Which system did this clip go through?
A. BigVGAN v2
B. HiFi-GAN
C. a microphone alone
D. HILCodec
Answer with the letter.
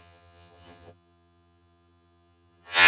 B